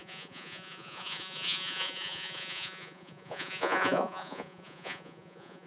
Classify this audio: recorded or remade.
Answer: remade